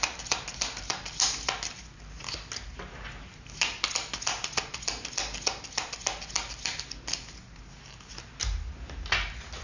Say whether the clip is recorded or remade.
recorded